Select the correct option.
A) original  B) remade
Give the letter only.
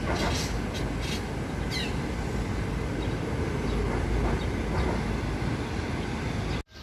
A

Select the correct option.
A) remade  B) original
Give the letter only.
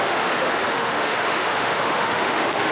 A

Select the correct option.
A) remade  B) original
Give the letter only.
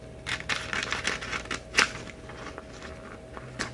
B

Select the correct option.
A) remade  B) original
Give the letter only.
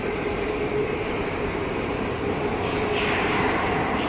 A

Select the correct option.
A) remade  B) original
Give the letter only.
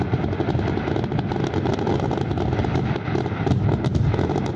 B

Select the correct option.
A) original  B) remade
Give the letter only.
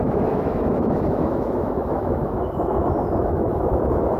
B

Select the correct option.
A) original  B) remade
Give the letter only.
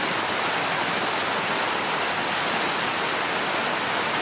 A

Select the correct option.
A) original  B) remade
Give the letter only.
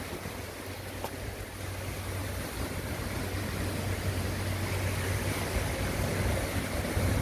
A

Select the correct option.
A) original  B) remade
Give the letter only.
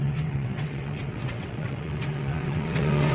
B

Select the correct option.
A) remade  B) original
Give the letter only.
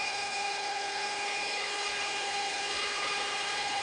A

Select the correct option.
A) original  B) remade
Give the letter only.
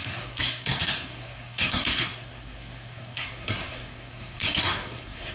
B